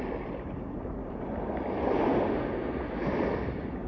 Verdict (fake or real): real